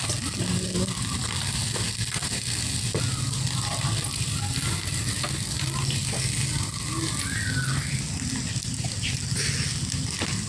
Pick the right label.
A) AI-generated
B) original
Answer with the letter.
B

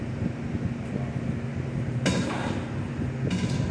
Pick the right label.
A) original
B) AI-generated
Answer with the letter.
A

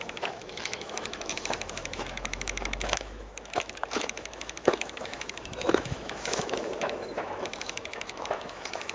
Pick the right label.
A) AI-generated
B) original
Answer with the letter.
A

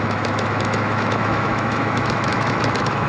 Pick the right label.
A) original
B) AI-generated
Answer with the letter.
B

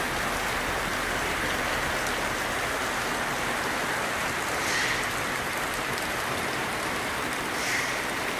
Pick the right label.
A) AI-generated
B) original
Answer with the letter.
B